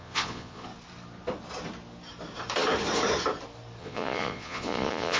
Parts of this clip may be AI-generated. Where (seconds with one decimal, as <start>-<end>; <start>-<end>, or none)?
0.0-0.7; 3.8-5.2